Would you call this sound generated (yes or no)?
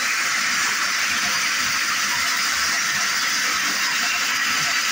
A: no